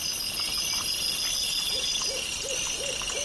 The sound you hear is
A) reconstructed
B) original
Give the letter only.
B